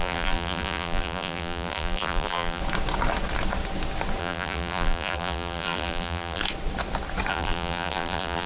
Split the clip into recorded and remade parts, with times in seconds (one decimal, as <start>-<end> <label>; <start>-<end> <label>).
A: 0.0-2.6 remade; 2.6-4.2 recorded; 4.2-6.4 remade; 6.4-7.3 recorded; 7.3-8.5 remade